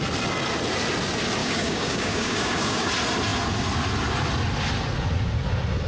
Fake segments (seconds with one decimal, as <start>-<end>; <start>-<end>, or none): 1.4-2.9